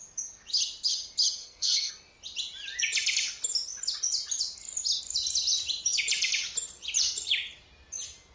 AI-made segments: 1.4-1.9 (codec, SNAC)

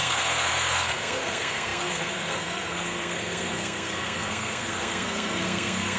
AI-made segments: 0.0-6.0 (codec, SNAC)